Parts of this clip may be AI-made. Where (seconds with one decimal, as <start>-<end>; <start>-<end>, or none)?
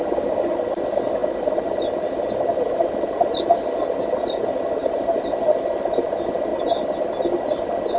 none